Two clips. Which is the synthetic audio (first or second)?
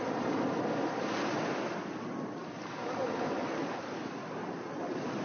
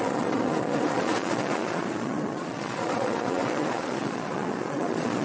second